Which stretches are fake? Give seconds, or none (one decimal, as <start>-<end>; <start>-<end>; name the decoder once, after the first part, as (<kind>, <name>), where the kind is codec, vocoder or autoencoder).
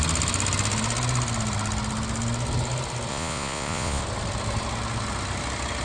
3.1-4.0 (vocoder, Vocos)